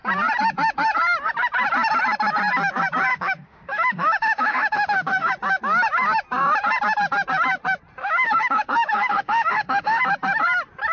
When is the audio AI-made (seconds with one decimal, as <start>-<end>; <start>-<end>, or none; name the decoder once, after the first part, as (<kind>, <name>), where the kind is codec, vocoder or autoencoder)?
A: 3.1-5.3 (autoencoder, DAC-VAE); 8.0-10.0

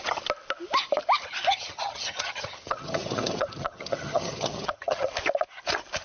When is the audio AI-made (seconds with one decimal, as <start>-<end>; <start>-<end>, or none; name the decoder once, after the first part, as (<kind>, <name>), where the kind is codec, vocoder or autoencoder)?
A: 1.5-5.1 (vocoder, HiFi-GAN)

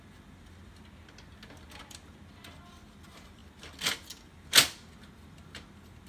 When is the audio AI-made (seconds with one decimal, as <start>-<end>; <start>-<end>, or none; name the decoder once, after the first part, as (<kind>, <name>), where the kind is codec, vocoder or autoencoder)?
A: none

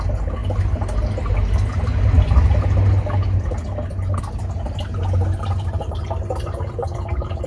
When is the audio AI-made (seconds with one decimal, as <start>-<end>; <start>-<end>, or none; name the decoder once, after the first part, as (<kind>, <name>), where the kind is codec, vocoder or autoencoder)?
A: none